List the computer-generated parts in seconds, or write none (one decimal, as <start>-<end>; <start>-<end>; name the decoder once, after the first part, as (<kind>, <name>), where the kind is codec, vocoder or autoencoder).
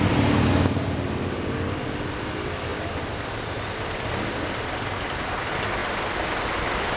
none